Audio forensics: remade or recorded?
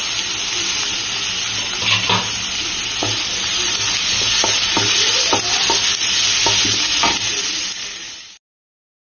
recorded